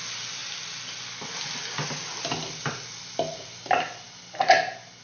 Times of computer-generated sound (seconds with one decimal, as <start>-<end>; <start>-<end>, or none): none